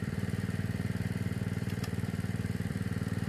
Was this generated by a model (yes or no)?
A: yes